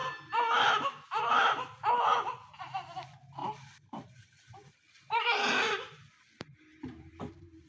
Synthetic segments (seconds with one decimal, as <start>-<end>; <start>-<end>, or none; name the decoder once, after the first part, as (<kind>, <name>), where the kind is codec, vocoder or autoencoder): 3.4-7.3 (vocoder, BigVGAN v2)